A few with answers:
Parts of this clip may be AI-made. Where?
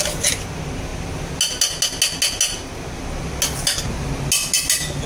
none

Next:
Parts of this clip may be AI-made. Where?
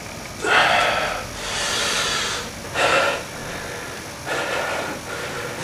none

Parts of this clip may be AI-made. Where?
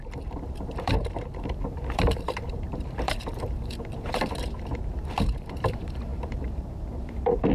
0.0-7.5 (vocoder, BigVGAN v2)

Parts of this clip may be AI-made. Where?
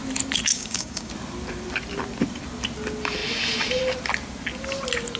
0.5-1.1 (codec, DAC)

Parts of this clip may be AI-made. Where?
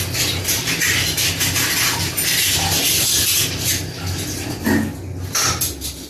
none